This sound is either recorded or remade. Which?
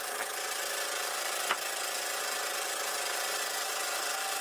recorded